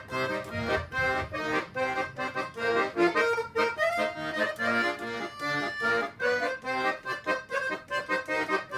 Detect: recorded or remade recorded